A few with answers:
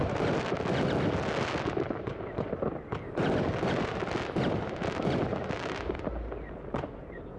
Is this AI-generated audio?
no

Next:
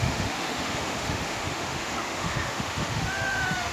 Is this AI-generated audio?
yes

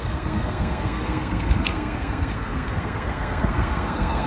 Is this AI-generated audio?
yes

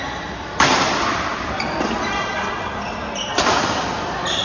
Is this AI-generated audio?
no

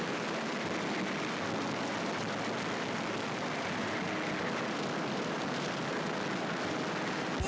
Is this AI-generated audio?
no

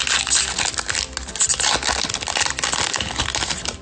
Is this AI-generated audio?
no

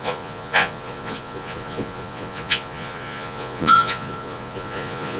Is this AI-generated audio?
yes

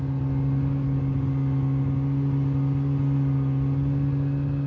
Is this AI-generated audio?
no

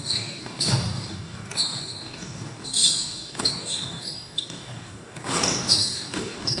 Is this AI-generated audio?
yes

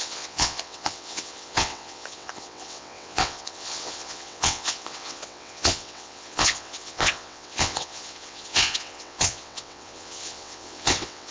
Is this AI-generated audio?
yes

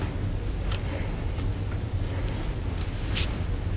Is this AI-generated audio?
no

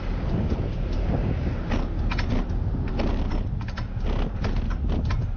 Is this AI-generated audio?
no